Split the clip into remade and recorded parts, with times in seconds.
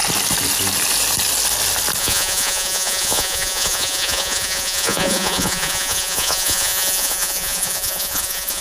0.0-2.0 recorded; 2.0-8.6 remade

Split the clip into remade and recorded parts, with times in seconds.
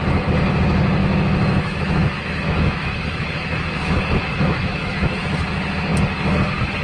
0.0-1.0 recorded; 1.0-5.1 remade; 5.1-6.8 recorded